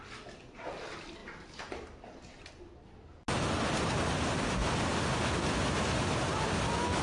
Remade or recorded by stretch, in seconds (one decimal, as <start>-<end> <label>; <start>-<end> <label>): 0.0-7.0 recorded